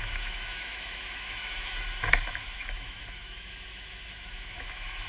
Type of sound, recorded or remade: remade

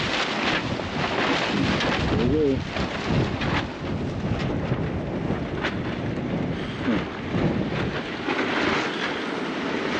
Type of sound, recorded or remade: recorded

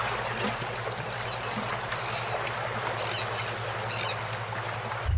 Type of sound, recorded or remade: recorded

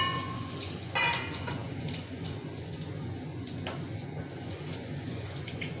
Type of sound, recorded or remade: remade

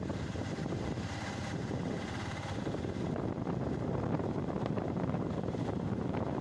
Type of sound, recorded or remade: remade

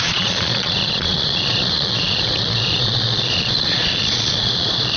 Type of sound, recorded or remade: remade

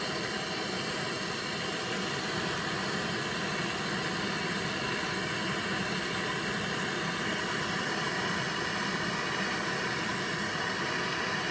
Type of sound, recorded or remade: recorded